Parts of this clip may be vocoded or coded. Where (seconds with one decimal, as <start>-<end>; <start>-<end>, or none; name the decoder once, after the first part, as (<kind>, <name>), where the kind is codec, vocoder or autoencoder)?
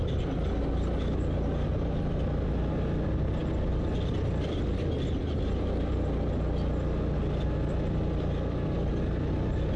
none